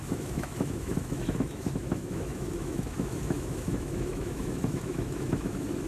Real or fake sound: fake